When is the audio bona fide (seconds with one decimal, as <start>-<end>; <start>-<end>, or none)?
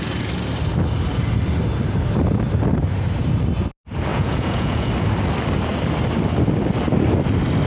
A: 0.0-4.1; 4.9-7.7